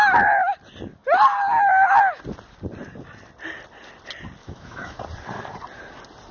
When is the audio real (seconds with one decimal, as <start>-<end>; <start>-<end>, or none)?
0.0-4.4; 5.0-6.3